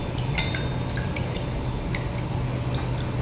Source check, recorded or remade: recorded